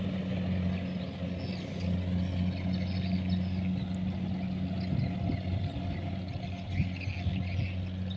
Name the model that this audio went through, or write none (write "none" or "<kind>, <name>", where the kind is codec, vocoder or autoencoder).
none